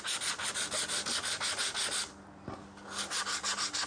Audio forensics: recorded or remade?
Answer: recorded